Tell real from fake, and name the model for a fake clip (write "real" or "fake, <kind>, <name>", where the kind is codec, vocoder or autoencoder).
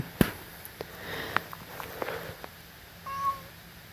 real